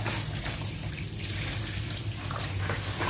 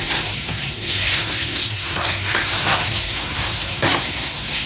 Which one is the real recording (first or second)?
first